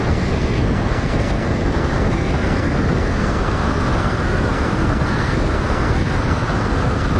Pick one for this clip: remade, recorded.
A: remade